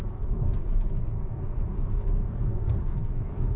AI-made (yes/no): yes